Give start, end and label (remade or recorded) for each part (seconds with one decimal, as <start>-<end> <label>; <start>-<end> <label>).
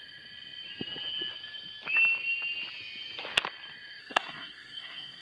0.0-4.0 recorded; 4.0-5.2 remade